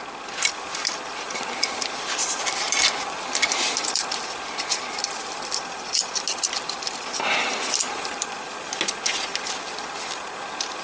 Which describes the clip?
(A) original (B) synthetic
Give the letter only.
A